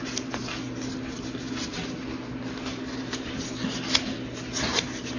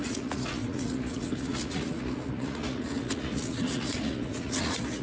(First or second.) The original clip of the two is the first